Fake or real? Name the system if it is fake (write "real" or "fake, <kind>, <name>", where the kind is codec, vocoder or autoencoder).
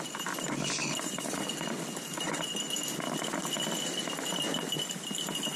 real